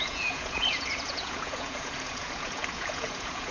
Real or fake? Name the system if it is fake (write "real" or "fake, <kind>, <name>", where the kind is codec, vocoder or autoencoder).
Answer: fake, vocoder, Vocos